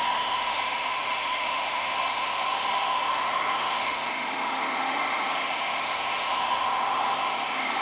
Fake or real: fake